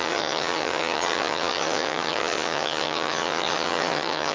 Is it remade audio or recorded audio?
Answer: remade